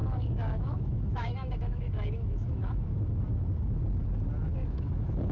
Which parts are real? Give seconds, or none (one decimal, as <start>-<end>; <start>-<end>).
3.2-4.5